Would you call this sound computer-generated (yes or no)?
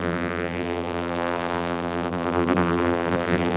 yes